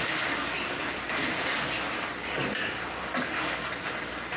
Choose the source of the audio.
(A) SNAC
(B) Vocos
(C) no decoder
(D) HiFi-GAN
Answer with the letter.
C